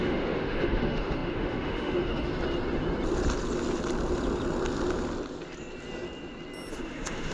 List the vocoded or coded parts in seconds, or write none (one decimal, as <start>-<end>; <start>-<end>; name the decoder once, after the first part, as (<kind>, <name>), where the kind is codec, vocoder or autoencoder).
0.0-2.3 (autoencoder, DAC-VAE); 6.7-7.3